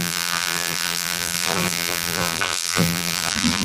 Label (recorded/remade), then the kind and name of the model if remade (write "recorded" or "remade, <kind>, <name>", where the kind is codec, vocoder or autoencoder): remade, vocoder, BigVGAN v2